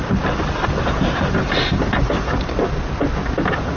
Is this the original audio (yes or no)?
yes